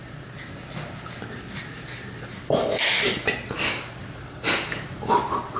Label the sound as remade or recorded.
recorded